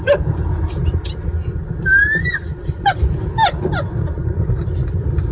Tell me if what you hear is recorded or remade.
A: remade